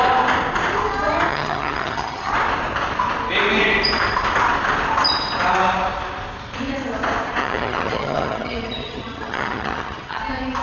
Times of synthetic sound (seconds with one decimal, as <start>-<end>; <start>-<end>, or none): 1.3-2.3; 7.4-10.2